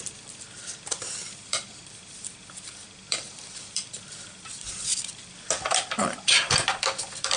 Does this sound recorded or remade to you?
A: remade